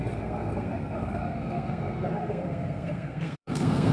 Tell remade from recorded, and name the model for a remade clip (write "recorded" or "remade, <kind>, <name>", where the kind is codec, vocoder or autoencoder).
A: remade, codec, SNAC